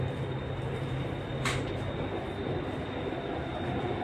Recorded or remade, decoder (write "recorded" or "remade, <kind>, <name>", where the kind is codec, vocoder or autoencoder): remade, vocoder, BigVGAN v2